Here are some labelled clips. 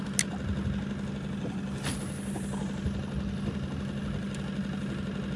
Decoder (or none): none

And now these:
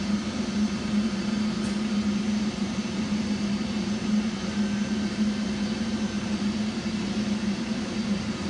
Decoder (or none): vocoder, BigVGAN v2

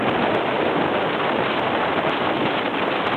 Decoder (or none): none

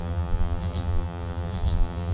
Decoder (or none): vocoder, BigVGAN v2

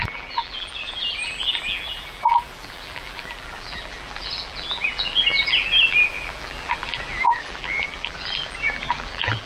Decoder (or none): vocoder, BigVGAN v2